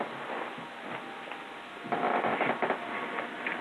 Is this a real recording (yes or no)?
yes